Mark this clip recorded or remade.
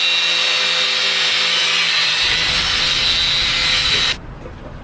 recorded